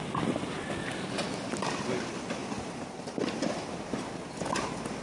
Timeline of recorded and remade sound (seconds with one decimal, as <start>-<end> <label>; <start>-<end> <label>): 0.0-2.4 recorded; 2.4-4.2 remade; 4.2-5.0 recorded